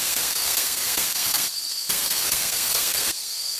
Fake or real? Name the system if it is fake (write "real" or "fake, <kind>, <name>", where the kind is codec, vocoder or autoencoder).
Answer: fake, codec, SNAC